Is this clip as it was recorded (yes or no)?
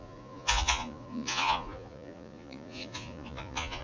no